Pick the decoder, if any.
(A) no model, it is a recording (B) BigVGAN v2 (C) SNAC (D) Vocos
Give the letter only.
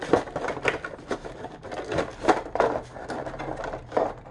A